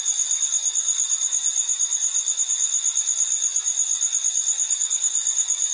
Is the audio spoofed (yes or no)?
no